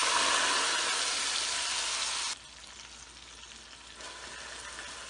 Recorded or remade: recorded